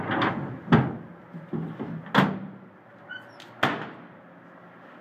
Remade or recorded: recorded